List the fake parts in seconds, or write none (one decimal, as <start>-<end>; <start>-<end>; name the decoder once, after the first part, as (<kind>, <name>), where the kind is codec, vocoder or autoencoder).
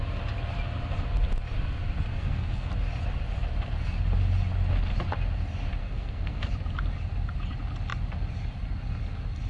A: 2.1-2.7 (codec, SNAC); 5.8-6.5